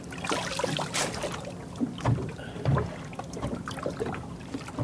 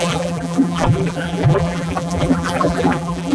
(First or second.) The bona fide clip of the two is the first